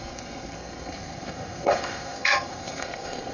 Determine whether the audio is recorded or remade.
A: remade